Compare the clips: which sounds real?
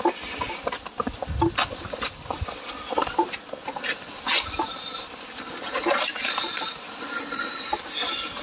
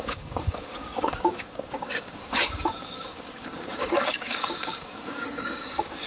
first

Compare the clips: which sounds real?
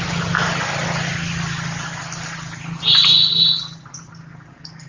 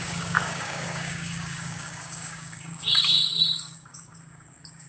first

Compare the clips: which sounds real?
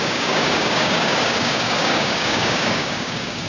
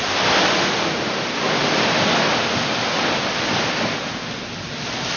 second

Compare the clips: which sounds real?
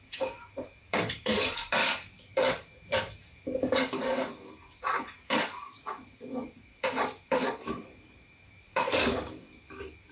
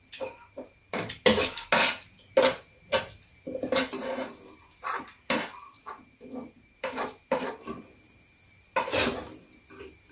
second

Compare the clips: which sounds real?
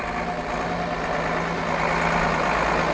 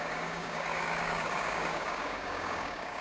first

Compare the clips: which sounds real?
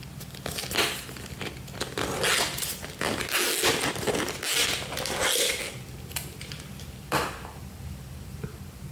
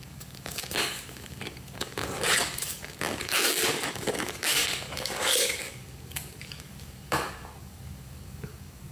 first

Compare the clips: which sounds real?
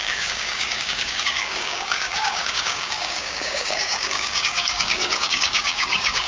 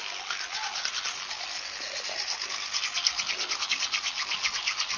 second